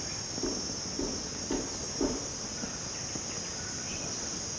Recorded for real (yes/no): yes